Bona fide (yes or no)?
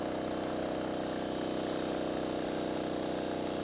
yes